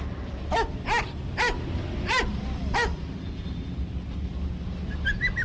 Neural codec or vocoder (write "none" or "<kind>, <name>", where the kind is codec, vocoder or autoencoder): none